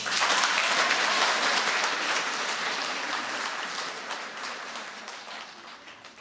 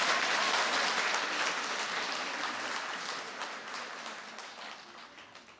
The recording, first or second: second